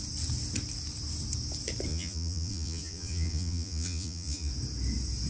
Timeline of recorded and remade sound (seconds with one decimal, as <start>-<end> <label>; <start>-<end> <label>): 0.0-1.9 recorded; 1.9-4.5 remade; 4.5-5.3 recorded